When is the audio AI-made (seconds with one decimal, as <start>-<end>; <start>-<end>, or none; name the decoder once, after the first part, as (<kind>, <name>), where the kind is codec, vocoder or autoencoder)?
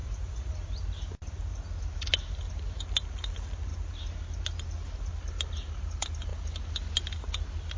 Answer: 0.0-0.5 (vocoder, Vocos)